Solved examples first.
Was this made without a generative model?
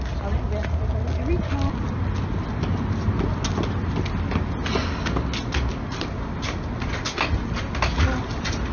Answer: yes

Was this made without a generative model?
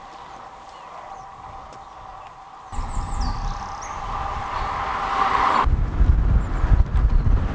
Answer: yes